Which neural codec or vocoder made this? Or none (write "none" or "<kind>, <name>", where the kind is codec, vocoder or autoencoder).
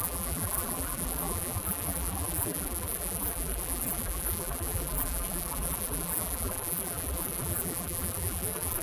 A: vocoder, BigVGAN v2